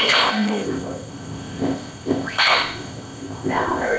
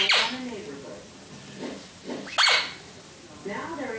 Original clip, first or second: second